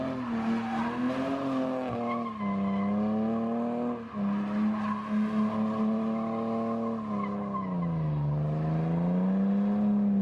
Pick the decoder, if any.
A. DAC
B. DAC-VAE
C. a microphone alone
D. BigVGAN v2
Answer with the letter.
C